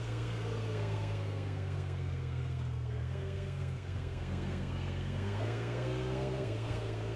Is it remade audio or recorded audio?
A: remade